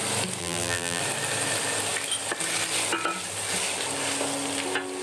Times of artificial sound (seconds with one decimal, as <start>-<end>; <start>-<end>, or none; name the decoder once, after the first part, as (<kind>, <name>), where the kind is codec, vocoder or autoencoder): 0.4-1.0 (vocoder, BigVGAN v2)